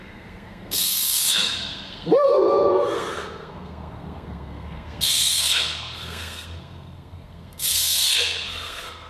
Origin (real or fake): fake